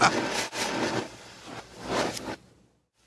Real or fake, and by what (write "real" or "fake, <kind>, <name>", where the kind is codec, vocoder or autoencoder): real